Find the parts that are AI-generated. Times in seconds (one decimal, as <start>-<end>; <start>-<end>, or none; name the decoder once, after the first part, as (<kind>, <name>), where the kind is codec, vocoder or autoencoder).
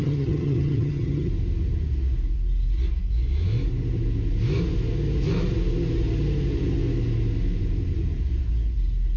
0.0-1.3 (vocoder, HiFi-GAN)